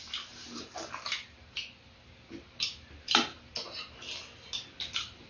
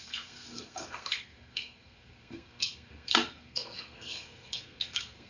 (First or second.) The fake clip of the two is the second